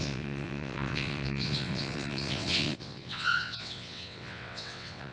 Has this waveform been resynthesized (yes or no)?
yes